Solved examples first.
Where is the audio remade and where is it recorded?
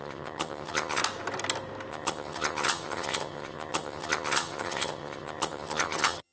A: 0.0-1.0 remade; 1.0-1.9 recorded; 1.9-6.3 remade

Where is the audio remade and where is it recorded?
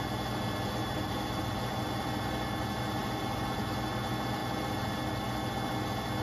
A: 0.0-0.8 recorded; 0.8-1.4 remade; 1.4-6.2 recorded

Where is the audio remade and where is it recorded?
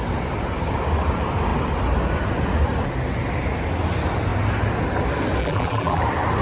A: 0.0-5.4 recorded; 5.4-6.0 remade; 6.0-6.4 recorded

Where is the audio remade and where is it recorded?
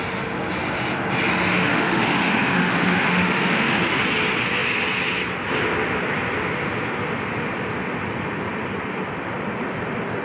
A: 0.0-1.5 recorded; 1.5-4.0 remade; 4.0-10.2 recorded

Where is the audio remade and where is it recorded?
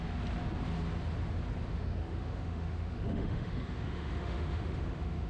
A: 0.0-1.7 recorded; 1.7-5.3 remade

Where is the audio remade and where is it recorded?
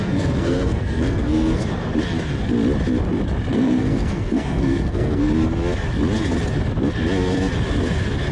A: 0.0-1.6 remade; 1.6-3.5 recorded; 3.5-5.3 remade; 5.3-8.3 recorded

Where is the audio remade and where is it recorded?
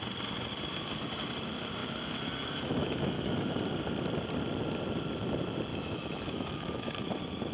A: 0.0-1.8 recorded; 1.8-3.5 remade; 3.5-5.7 recorded; 5.7-7.1 remade; 7.1-7.5 recorded